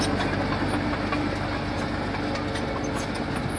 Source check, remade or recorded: recorded